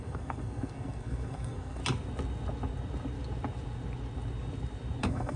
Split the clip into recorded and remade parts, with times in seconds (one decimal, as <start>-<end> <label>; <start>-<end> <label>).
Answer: 0.0-1.8 remade; 1.8-5.0 recorded; 5.0-5.4 remade